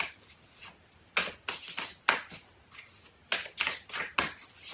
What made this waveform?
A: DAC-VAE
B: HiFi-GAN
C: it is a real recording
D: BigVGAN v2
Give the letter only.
C